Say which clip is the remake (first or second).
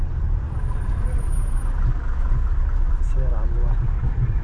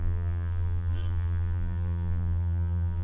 second